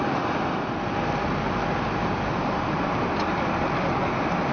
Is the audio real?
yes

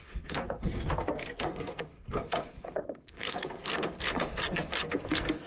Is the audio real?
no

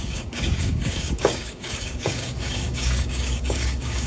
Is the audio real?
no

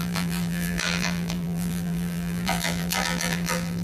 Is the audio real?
no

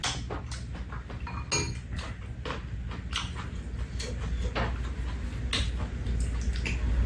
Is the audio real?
yes